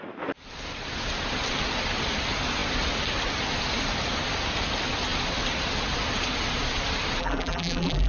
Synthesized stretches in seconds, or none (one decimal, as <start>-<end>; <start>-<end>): 7.2-8.1